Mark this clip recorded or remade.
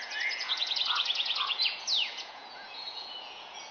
remade